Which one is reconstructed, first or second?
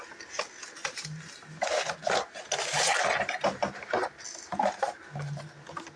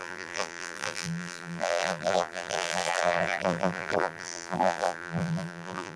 second